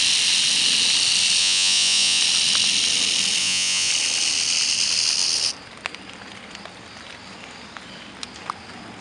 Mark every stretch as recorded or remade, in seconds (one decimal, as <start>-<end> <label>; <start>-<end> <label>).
0.0-1.4 recorded; 1.4-2.2 remade; 2.2-3.4 recorded; 3.4-3.9 remade; 3.9-9.0 recorded